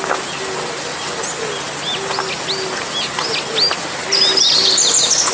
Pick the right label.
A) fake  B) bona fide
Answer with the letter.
B